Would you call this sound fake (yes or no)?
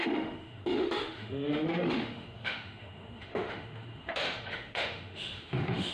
yes